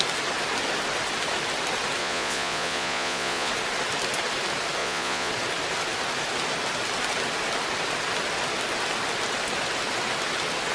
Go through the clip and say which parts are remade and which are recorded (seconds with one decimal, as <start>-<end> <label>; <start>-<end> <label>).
0.0-2.0 recorded; 2.0-3.5 remade; 3.5-4.8 recorded; 4.8-5.3 remade; 5.3-10.7 recorded